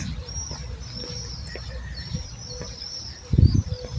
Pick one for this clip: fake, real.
real